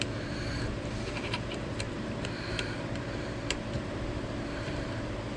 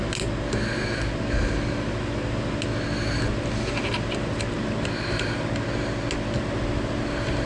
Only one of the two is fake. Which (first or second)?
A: first